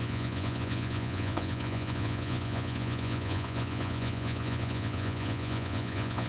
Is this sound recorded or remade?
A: remade